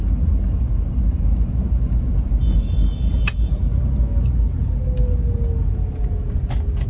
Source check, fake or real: real